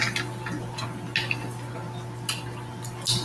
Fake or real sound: real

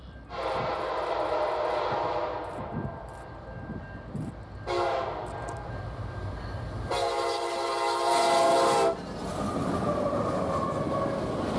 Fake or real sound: real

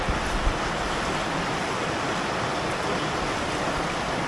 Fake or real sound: real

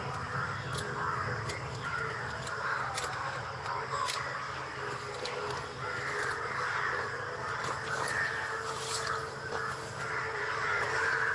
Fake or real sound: real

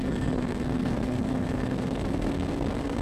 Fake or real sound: fake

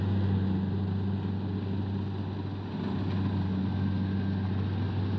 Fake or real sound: real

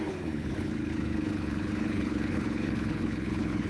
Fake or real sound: fake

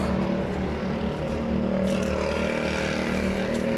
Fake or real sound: real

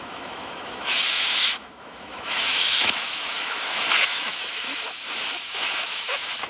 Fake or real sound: fake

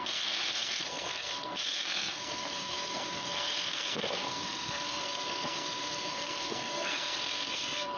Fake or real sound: fake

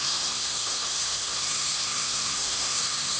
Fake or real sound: fake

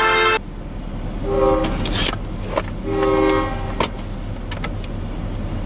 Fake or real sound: real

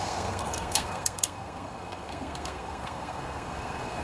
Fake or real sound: fake